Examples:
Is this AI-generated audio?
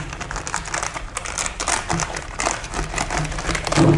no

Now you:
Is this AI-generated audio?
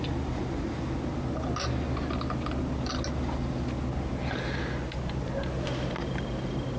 no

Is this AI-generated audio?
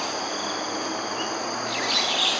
no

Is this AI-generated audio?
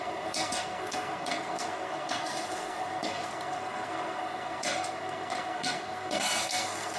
yes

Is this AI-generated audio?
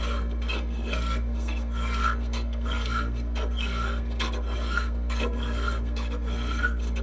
yes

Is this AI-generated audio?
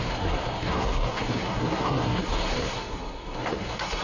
yes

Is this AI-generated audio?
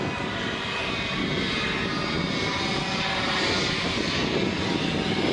no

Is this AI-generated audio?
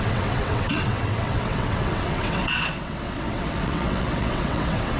yes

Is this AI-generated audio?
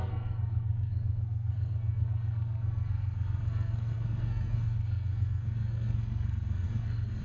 yes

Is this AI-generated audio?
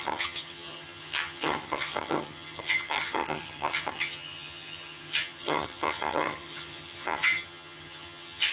yes